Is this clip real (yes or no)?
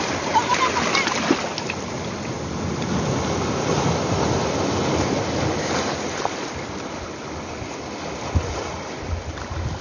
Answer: yes